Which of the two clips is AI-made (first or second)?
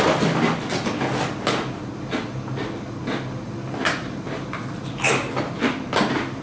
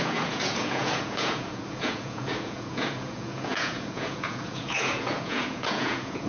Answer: second